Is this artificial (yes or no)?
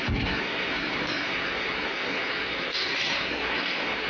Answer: yes